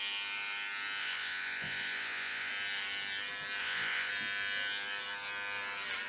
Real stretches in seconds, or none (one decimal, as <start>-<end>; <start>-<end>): 0.0-1.0; 2.5-3.6; 4.1-6.1

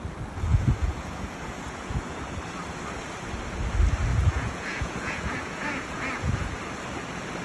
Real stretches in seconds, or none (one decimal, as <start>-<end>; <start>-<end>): 0.0-0.5; 2.3-4.1; 6.6-7.4

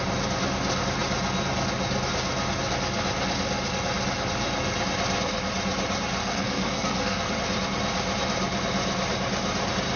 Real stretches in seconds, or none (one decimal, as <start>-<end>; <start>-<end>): 0.0-6.2; 7.3-10.0

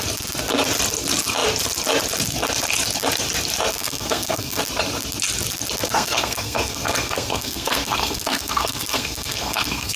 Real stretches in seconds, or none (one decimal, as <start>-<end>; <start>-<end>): 0.0-3.8; 4.6-5.8

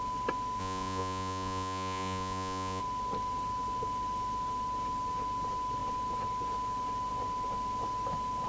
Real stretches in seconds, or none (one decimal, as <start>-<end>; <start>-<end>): 0.0-0.6; 2.8-8.5

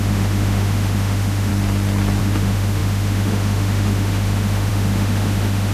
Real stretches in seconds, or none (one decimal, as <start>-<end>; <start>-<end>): 1.5-2.2

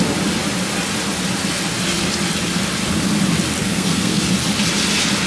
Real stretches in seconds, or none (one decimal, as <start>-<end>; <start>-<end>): 0.0-3.6; 4.3-5.3

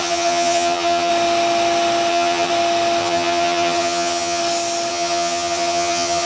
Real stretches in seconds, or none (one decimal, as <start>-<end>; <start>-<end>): 1.1-2.1; 2.5-3.0; 4.4-4.9